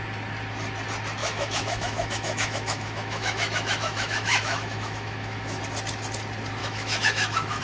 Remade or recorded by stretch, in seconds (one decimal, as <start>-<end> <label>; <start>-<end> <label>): 0.0-1.2 recorded; 1.2-5.6 remade; 5.6-6.6 recorded; 6.6-7.6 remade